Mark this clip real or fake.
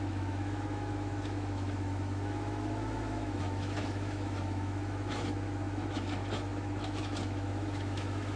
fake